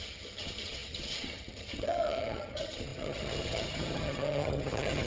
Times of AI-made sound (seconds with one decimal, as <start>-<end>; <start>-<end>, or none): 0.0-5.1